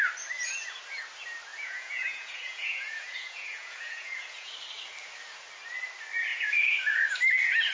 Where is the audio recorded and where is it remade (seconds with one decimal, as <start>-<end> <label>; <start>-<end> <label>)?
0.0-1.5 recorded; 1.5-4.5 remade; 4.5-6.3 recorded; 6.3-7.1 remade; 7.1-7.7 recorded